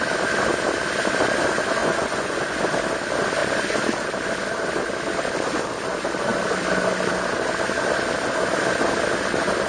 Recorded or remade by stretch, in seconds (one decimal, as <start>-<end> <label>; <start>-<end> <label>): 0.0-1.8 recorded; 1.8-2.6 remade; 2.6-9.7 recorded